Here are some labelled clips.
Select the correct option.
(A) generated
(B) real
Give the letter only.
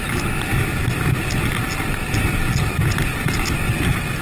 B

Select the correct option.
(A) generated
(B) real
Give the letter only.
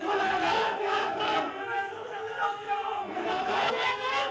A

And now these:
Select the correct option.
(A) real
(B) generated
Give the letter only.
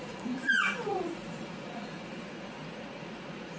B